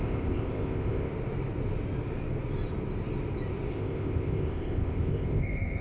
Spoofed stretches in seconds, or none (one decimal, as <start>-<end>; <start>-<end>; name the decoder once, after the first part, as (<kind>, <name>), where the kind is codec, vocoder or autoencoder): 0.0-1.1 (codec, ZipCodec); 3.7-5.8